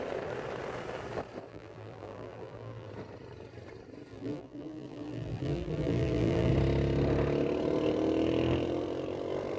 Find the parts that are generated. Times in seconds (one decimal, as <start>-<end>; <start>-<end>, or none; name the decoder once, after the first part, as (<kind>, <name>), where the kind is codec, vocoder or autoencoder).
1.5-2.9 (vocoder, BigVGAN v2); 4.1-6.5

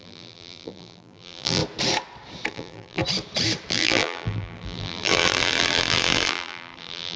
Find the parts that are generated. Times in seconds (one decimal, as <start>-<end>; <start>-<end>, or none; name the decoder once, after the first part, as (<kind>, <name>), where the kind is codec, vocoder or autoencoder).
0.0-1.6 (vocoder, BigVGAN v2); 2.5-3.0; 3.7-7.2

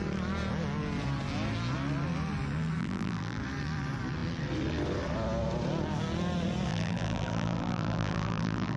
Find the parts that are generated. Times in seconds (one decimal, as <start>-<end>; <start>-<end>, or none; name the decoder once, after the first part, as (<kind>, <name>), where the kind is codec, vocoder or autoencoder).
2.8-3.4 (vocoder, BigVGAN v2); 6.7-8.8

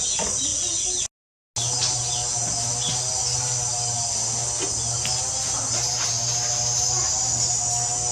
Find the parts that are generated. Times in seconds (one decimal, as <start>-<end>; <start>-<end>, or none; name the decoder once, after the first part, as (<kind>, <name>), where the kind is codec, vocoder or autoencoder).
none